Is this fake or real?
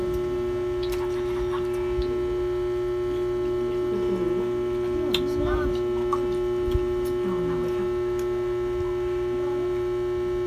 real